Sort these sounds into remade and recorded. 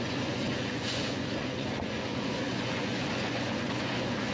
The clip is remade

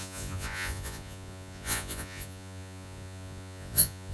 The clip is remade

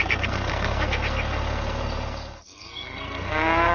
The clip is remade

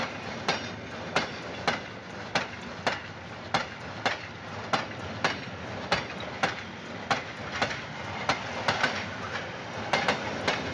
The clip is recorded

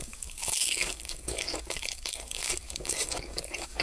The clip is remade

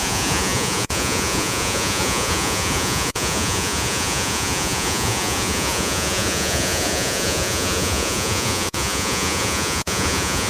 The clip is remade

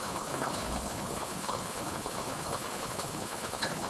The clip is remade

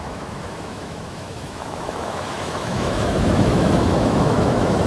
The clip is remade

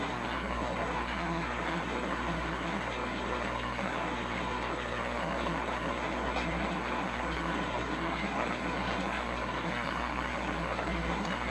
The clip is remade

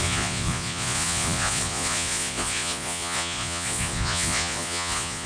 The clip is remade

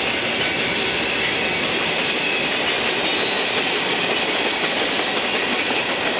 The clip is recorded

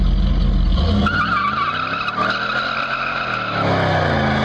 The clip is recorded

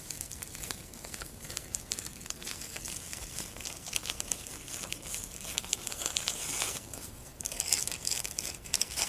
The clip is remade